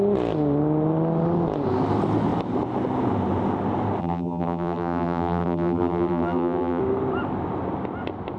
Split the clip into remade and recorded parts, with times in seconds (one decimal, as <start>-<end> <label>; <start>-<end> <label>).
0.0-4.0 recorded; 4.0-6.8 remade; 6.8-8.4 recorded